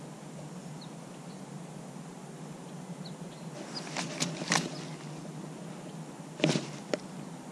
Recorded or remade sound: recorded